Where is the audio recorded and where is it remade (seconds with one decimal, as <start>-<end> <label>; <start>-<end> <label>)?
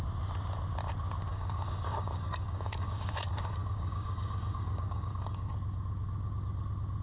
0.0-1.3 recorded; 1.3-5.5 remade; 5.5-7.0 recorded